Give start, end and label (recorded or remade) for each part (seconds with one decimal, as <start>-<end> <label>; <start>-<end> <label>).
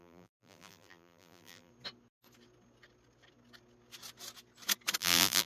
0.0-1.7 remade; 1.7-5.0 recorded; 5.0-5.5 remade